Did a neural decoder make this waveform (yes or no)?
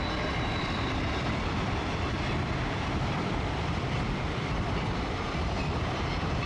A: yes